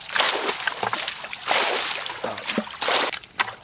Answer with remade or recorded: recorded